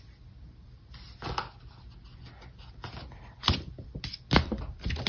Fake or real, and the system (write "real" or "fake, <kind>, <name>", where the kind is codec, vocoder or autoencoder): real